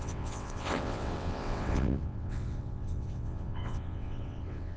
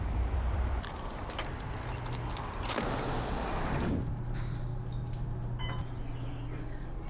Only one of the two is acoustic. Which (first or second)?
second